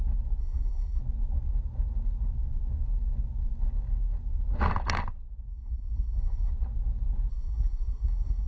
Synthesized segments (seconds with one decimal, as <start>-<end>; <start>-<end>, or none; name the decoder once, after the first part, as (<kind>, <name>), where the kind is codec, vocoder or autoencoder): 0.4-1.0 (codec, SNAC); 5.5-6.5; 7.3-8.5